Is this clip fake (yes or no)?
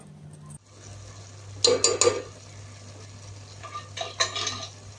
no